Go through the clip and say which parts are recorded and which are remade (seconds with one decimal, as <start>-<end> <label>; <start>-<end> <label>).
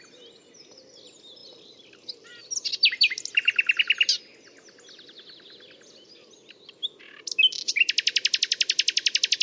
0.0-9.4 recorded